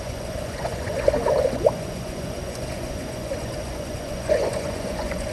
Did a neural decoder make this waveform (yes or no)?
yes